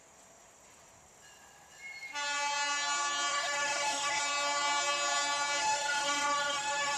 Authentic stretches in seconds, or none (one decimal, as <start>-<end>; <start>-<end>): 0.0-3.3; 4.2-5.6